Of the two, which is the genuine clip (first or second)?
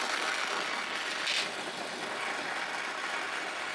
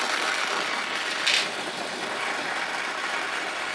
first